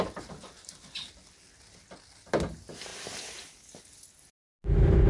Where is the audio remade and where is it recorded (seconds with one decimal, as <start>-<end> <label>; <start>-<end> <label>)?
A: 0.0-5.1 recorded